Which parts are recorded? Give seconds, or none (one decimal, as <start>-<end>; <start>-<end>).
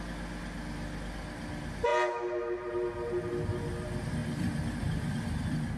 0.0-4.2